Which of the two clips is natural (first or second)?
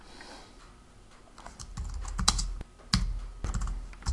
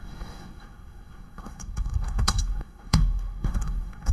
first